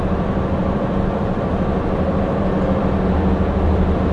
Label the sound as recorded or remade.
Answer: remade